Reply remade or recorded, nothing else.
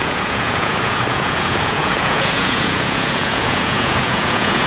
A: remade